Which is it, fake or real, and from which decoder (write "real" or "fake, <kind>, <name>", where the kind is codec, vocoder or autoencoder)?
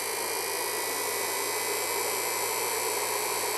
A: real